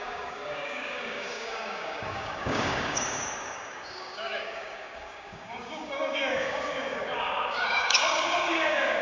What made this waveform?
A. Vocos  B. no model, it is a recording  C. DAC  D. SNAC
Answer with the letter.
C